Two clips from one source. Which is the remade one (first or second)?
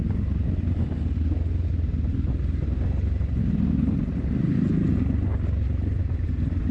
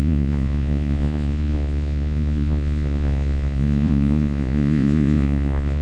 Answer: second